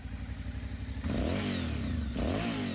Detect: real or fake real